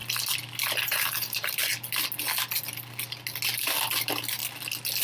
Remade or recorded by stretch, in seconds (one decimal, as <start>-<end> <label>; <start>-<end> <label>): 0.0-0.7 recorded; 0.7-1.6 remade; 1.6-4.0 recorded; 4.0-4.4 remade; 4.4-5.0 recorded